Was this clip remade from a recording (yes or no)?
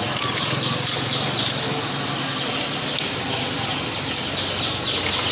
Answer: no